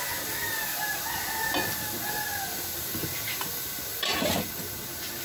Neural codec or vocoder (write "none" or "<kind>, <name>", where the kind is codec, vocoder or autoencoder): none